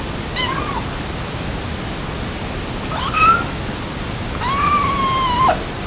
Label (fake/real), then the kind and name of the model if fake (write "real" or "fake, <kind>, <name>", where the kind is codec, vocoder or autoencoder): real